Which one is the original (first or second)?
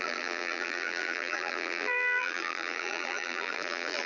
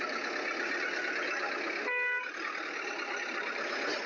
second